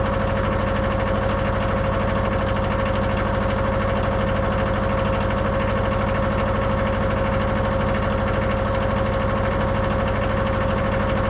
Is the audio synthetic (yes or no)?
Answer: no